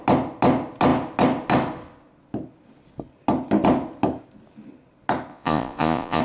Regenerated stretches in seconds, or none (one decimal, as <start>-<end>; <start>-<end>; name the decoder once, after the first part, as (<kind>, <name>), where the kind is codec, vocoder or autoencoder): 5.3-6.2 (vocoder, Vocos)